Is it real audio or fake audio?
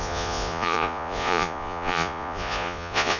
fake